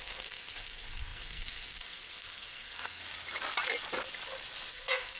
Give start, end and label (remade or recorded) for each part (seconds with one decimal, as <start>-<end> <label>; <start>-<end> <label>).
0.0-3.0 remade; 3.0-4.7 recorded; 4.7-5.2 remade